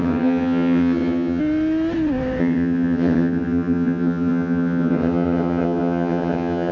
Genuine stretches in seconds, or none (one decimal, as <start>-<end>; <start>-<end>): 1.4-2.4